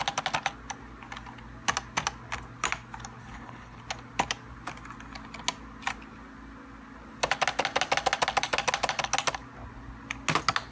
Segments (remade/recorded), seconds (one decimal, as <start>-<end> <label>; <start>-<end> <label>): 0.0-3.2 recorded; 3.2-3.8 remade; 3.8-10.7 recorded